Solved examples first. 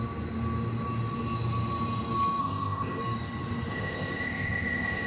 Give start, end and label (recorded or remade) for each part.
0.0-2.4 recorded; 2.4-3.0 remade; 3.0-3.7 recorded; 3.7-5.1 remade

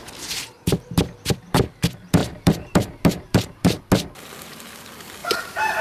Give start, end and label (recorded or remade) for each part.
0.0-2.2 recorded; 2.2-3.8 remade; 3.8-5.2 recorded; 5.2-5.8 remade